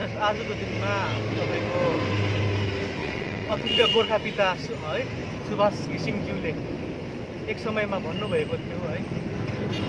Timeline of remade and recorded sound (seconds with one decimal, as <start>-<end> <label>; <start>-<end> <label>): 0.0-3.0 recorded; 3.0-4.1 remade; 4.1-9.9 recorded